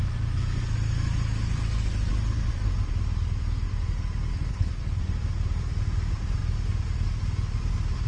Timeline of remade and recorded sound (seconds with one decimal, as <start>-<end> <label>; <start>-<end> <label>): 0.0-4.5 recorded; 4.5-5.0 remade; 5.0-8.1 recorded